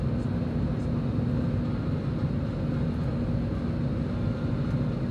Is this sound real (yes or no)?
yes